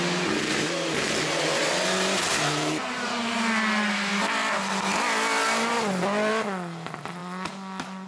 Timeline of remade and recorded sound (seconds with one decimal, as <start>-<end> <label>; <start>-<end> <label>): 0.0-8.1 recorded